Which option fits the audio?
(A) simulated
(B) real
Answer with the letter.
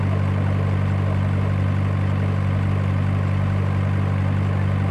B